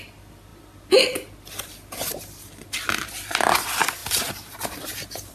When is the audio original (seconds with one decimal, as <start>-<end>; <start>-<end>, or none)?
0.0-5.3